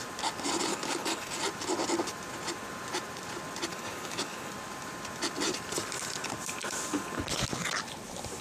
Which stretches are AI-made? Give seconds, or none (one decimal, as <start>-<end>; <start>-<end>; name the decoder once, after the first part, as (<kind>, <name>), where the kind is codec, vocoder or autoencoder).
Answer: 0.7-1.4 (codec, DAC); 3.7-4.5